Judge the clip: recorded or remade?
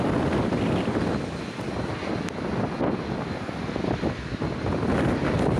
recorded